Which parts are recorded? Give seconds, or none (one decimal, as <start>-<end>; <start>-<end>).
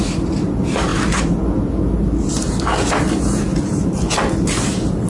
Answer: 0.0-5.1